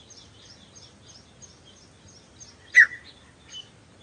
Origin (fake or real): real